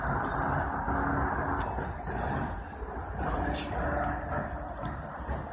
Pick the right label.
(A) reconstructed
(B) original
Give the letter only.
B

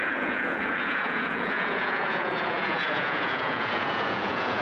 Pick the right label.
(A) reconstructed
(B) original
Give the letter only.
A